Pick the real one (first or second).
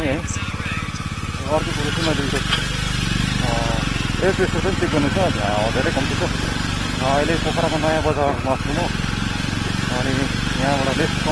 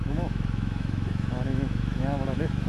first